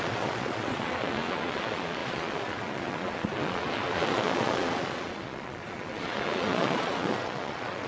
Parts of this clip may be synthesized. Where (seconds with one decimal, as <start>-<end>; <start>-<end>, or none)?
0.0-7.9